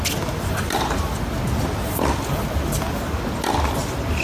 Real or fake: real